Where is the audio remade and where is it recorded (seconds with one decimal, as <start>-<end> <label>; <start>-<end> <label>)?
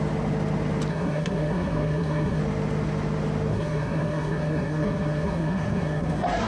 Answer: 0.0-0.9 recorded; 0.9-2.4 remade; 2.4-3.5 recorded; 3.5-6.5 remade